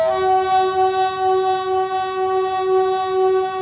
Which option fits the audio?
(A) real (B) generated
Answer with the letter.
A